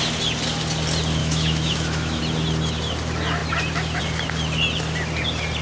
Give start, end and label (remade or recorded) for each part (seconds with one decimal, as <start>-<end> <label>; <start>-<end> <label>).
0.0-1.2 recorded; 1.2-2.2 remade; 2.2-5.6 recorded